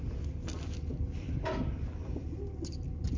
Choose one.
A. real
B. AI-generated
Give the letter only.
A